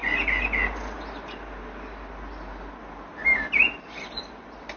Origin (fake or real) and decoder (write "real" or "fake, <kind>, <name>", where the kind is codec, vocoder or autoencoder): real